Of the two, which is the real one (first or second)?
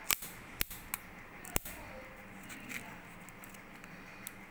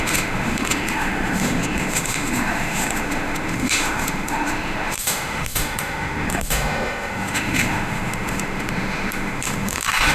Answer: first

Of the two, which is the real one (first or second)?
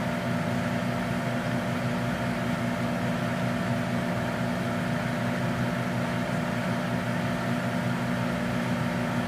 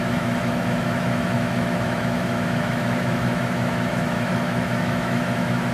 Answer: first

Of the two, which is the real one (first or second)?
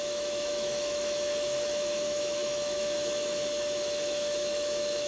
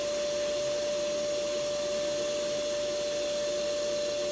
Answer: second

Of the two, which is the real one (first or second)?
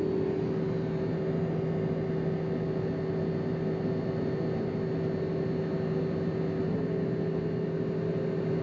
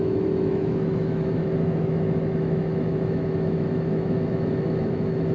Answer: first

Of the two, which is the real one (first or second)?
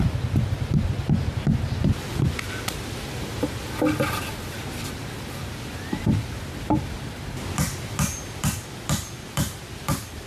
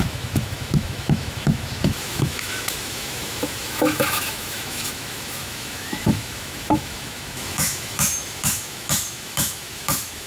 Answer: first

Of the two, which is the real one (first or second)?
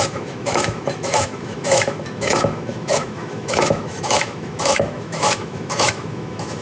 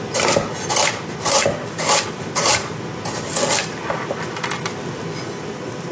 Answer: second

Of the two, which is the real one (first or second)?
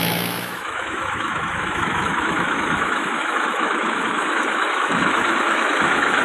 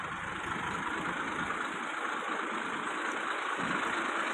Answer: second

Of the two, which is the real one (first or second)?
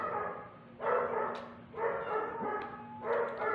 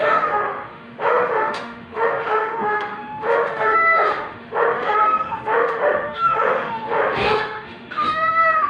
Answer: first